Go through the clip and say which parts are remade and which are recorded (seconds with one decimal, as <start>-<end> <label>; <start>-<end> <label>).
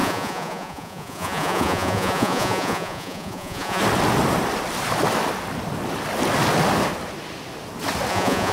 0.0-3.8 remade; 3.8-8.1 recorded; 8.1-8.5 remade